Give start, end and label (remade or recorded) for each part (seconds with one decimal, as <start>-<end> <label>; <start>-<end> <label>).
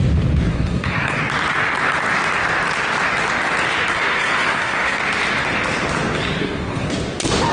0.0-0.5 recorded; 0.5-1.2 remade; 1.2-3.9 recorded; 3.9-5.0 remade; 5.0-6.4 recorded; 6.4-6.9 remade; 6.9-7.5 recorded